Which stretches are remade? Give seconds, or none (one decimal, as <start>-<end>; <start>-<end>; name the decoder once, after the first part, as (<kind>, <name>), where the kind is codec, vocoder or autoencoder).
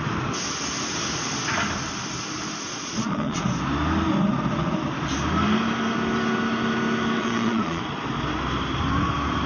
2.7-3.4 (vocoder, Vocos); 7.2-7.8